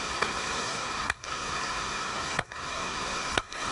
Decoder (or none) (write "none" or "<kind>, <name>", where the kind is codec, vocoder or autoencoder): codec, SNAC